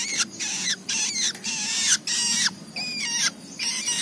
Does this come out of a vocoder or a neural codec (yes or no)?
no